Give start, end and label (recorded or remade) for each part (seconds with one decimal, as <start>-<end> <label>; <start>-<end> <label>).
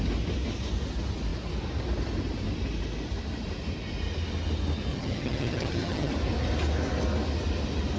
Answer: 0.0-4.9 recorded; 4.9-6.1 remade; 6.1-8.0 recorded